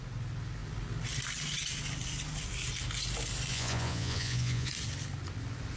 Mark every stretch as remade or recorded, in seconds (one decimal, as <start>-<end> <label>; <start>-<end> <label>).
0.0-3.5 recorded; 3.5-4.7 remade; 4.7-5.8 recorded